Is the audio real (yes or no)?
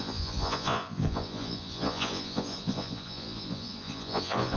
no